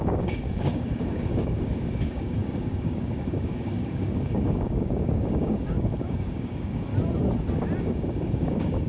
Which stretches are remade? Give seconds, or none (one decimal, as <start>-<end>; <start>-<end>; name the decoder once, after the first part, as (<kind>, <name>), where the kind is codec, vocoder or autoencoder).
0.0-6.9 (codec, DAC); 7.8-8.9